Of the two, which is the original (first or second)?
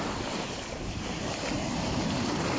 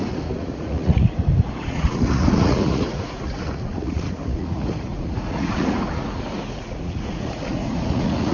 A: first